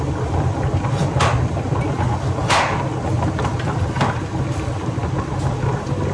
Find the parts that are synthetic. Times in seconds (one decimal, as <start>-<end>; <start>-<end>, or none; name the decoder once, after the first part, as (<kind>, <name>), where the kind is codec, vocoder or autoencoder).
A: none